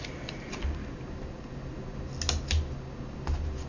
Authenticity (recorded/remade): recorded